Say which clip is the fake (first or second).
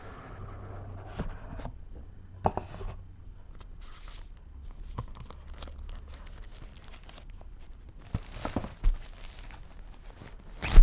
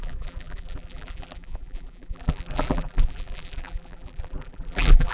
second